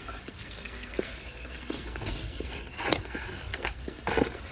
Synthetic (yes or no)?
yes